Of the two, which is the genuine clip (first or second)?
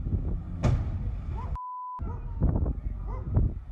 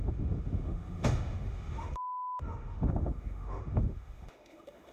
first